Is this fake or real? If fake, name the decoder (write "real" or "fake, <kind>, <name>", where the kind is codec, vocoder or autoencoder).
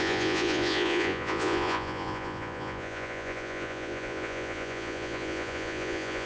fake, vocoder, Vocos